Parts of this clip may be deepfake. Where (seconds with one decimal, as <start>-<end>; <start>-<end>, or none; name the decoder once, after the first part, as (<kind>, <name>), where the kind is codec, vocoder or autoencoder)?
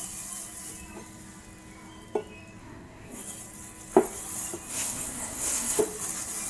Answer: 2.6-3.2 (codec, SNAC); 4.7-5.8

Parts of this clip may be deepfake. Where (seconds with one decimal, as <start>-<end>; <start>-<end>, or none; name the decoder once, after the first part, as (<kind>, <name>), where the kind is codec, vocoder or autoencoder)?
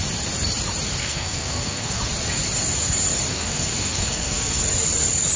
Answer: 1.0-2.0 (codec, SNAC); 3.3-4.6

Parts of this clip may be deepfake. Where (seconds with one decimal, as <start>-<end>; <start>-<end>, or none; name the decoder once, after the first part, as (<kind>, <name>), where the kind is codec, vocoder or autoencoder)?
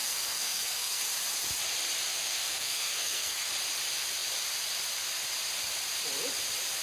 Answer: 0.0-1.0 (codec, SNAC); 2.1-3.5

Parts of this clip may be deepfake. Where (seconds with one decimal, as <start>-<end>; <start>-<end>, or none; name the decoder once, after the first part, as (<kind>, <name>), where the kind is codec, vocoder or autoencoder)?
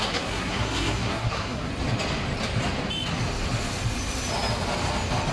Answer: 0.0-1.7 (codec, SNAC)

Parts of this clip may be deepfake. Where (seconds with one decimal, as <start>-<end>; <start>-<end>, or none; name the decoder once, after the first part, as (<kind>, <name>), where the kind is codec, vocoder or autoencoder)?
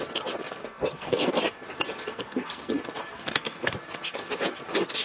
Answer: 0.6-1.4 (codec, SNAC); 2.1-2.7; 3.1-3.7